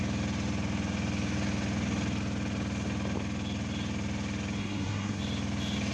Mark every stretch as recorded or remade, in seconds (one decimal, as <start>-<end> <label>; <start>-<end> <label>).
0.0-4.6 recorded; 4.6-5.2 remade; 5.2-5.9 recorded